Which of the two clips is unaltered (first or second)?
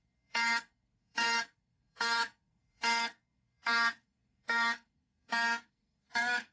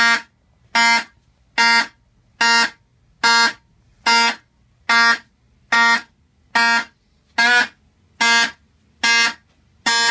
second